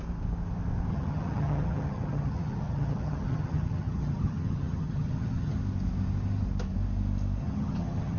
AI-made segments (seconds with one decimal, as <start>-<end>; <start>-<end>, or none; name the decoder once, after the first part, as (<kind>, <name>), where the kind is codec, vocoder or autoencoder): 0.9-5.6 (vocoder, HiFi-GAN); 7.4-8.2

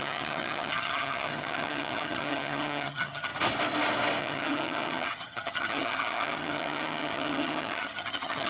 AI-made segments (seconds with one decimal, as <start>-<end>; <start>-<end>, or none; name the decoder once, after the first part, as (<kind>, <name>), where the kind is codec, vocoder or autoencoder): 0.0-3.3 (vocoder, HiFi-GAN); 4.2-8.5

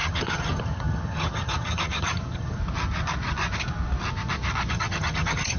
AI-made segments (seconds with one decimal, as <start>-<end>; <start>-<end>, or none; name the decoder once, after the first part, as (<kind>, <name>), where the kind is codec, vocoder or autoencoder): 0.0-2.6 (vocoder, HiFi-GAN); 4.7-5.6

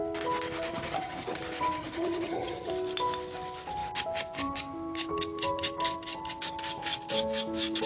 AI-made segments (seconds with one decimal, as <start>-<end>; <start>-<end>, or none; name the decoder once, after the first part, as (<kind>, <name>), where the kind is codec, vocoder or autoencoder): 0.7-1.4 (vocoder, HiFi-GAN); 1.8-2.7

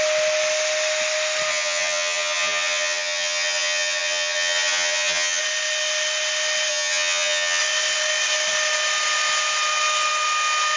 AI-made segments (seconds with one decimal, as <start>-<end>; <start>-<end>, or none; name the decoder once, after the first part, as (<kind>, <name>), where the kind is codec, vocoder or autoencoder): 1.5-5.4 (vocoder, HiFi-GAN); 6.7-7.6

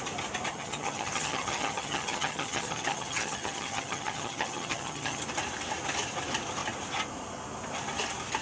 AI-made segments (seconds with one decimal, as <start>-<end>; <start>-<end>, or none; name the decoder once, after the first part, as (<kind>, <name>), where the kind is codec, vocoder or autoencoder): 0.5-5.2 (vocoder, HiFi-GAN)

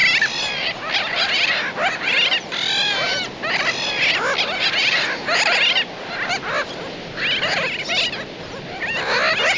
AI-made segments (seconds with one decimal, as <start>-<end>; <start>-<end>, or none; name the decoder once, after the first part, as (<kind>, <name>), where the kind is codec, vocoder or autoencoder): none